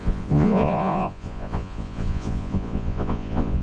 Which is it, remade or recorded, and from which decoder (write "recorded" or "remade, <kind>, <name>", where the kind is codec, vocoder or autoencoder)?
remade, vocoder, Vocos